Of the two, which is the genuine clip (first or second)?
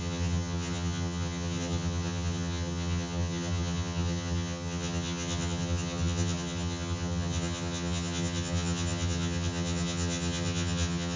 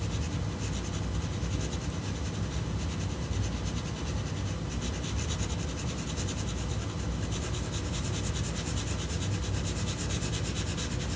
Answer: second